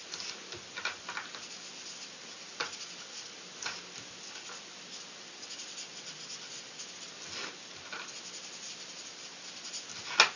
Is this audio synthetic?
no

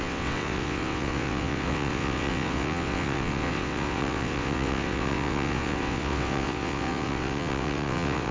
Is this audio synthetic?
yes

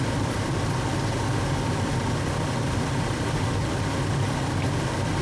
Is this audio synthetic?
no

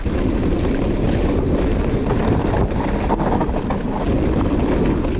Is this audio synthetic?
no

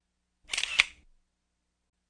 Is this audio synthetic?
no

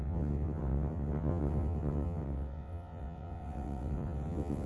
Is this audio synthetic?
yes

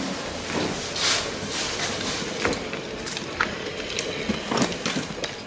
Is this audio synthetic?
no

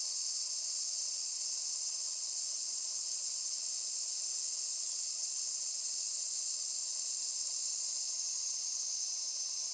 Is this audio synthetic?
yes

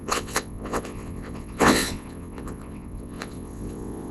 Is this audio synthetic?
yes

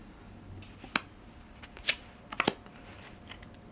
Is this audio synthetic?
no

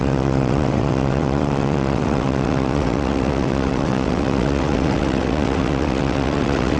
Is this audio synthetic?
yes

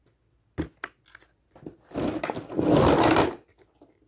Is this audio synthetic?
no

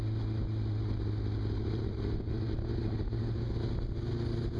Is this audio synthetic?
no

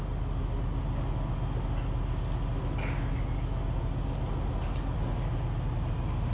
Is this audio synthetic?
no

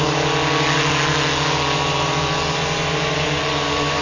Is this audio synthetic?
no